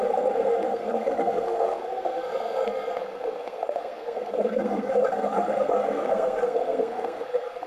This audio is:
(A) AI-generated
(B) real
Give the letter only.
A